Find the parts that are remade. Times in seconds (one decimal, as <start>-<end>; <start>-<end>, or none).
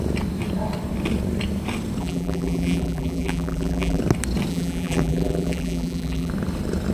2.0-4.0; 4.5-6.3